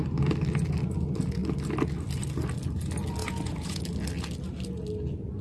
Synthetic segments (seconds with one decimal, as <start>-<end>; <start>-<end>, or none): 3.2-3.8